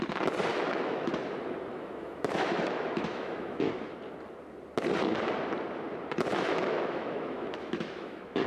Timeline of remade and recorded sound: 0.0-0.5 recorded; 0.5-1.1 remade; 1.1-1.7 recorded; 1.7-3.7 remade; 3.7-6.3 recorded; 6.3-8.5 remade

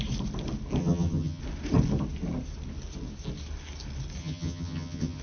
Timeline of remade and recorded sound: 0.0-0.8 recorded; 0.8-1.4 remade; 1.4-4.2 recorded; 4.2-5.2 remade